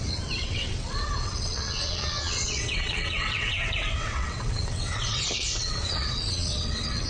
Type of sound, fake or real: fake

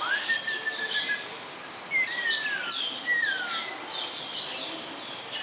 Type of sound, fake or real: real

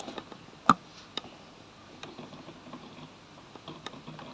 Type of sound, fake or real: real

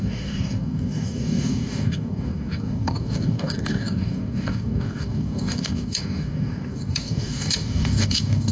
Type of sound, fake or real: fake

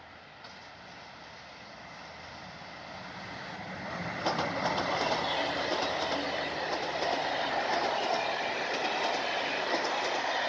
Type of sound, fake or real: real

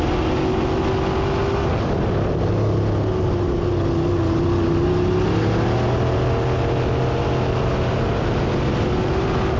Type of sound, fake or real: real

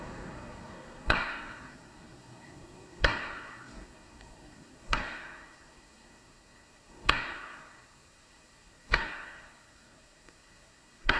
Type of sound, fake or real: fake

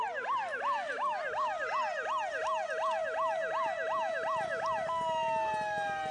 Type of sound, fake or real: real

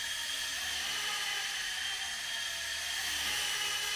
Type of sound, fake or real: real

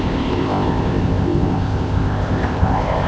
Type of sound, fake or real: fake